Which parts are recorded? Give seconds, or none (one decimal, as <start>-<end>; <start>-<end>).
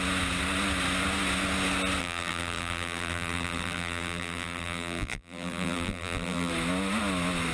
0.0-2.0; 6.5-7.5